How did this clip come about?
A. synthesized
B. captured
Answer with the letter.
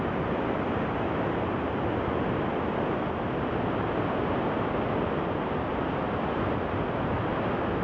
B